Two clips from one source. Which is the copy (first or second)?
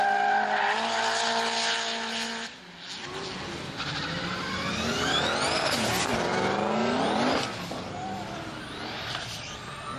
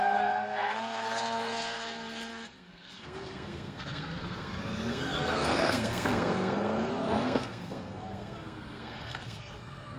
second